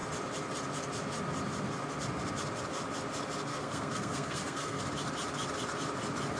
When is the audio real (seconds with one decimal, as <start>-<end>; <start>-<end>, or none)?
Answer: 0.0-3.5; 4.8-6.4